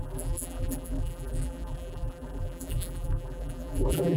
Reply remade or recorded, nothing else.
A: remade